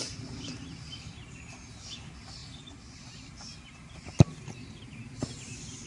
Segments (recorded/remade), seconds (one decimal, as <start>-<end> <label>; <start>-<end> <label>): 0.0-5.9 recorded